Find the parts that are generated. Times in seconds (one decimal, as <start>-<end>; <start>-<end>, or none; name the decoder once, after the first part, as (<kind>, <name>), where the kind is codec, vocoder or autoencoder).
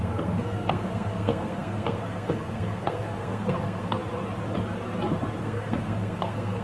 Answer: 0.0-4.0 (codec, SNAC); 5.4-6.6